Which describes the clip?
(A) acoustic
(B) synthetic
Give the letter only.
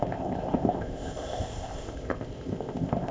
B